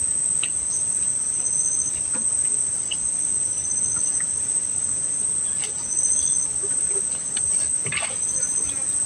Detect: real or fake real